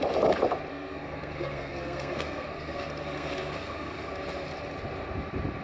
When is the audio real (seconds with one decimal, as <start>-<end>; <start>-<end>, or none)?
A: 0.0-0.7; 4.1-5.6